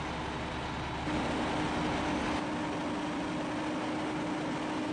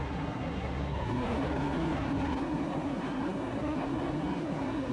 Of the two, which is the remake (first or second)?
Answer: second